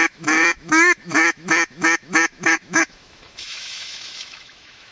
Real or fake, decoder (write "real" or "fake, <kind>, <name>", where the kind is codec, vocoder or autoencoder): fake, autoencoder, DAC-VAE